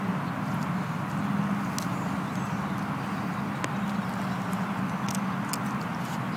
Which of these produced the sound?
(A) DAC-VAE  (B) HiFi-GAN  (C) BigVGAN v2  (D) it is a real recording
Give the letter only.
D